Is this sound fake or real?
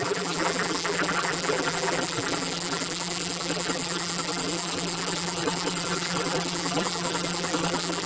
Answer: fake